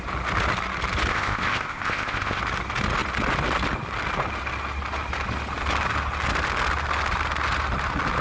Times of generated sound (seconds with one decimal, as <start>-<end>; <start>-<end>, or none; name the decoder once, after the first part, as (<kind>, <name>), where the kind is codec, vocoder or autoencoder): 1.1-2.4 (codec, ZipCodec)